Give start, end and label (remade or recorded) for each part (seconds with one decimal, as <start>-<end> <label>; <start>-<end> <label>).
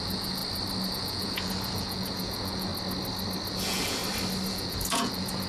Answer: 0.0-0.4 remade; 0.4-0.9 recorded; 0.9-2.7 remade; 2.7-3.5 recorded; 3.5-4.0 remade; 4.0-4.5 recorded; 4.5-5.5 remade